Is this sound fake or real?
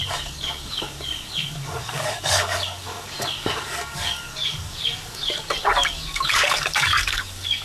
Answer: fake